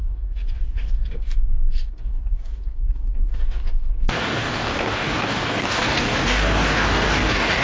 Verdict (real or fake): fake